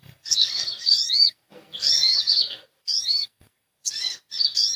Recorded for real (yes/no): no